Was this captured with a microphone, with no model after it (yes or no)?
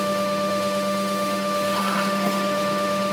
no